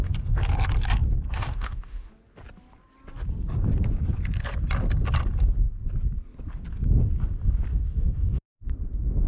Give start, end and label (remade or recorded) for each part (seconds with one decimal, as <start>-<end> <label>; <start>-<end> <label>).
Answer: 0.0-1.3 recorded; 1.3-2.1 remade; 2.1-7.7 recorded; 7.7-8.4 remade; 8.4-9.3 recorded